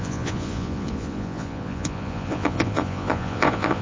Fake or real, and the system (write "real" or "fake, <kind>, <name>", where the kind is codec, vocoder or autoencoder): fake, vocoder, Vocos